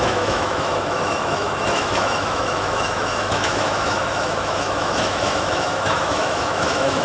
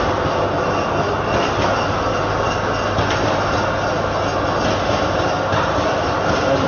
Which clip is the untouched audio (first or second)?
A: second